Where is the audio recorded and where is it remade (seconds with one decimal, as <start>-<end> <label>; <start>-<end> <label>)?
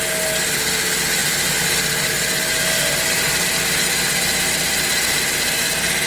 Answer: 0.0-6.1 recorded